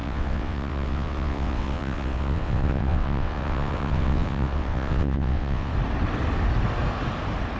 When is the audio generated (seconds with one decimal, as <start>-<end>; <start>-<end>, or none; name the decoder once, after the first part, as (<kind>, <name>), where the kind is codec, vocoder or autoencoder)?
0.0-5.7 (vocoder, WaveNeXt)